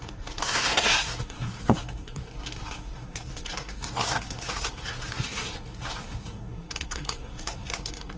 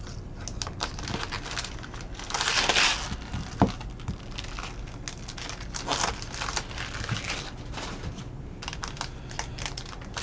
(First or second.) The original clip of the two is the second